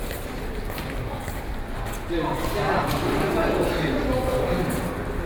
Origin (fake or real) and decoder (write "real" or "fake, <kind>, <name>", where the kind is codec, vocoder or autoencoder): real